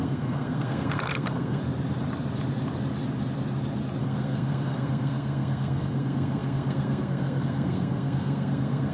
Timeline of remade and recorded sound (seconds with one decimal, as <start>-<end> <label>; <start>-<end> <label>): 0.0-1.6 remade; 1.6-4.0 recorded; 4.0-8.9 remade